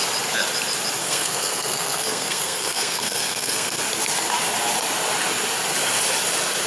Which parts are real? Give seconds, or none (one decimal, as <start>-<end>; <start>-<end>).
0.0-1.0; 3.8-6.7